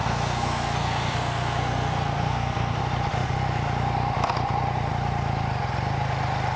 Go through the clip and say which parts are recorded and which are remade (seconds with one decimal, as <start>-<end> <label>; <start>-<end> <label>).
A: 0.0-2.8 remade; 2.8-6.6 recorded